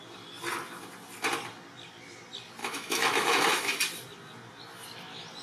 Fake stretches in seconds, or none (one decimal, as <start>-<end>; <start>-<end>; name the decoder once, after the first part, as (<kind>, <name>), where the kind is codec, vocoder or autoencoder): 2.6-3.8 (autoencoder, DAC-VAE)

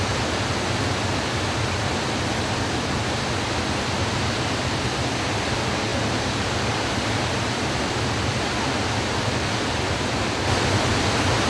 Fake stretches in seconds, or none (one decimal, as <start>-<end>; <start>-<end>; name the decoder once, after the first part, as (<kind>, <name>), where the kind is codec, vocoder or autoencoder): none

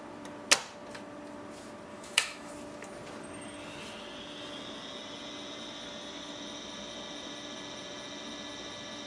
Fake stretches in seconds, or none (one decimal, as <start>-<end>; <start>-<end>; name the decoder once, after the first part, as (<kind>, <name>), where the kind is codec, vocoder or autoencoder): 1.9-2.5 (autoencoder, DAC-VAE)

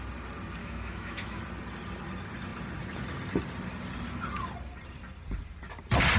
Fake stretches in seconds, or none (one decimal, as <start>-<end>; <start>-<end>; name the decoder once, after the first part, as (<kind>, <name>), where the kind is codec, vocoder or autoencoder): 0.6-1.4 (autoencoder, DAC-VAE)

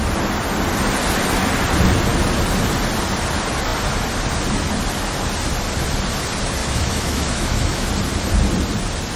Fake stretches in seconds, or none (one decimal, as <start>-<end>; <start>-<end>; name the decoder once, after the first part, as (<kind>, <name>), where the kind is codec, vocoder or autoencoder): 6.6-7.9 (autoencoder, DAC-VAE)

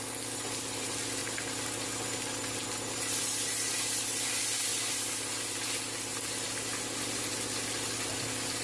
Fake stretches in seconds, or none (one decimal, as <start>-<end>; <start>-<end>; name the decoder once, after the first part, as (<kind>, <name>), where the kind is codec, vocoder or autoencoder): none

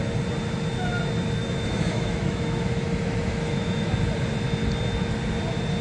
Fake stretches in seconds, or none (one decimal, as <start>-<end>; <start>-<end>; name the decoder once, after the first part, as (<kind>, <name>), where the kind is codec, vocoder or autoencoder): 1.4-3.9 (autoencoder, DAC-VAE)